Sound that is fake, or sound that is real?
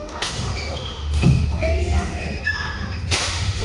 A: fake